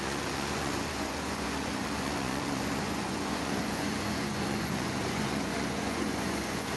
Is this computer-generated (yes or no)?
yes